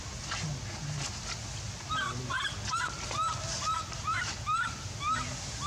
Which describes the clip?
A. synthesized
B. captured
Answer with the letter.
B